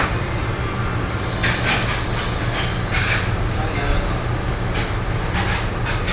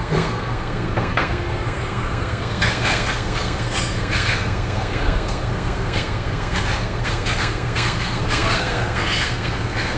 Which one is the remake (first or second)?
second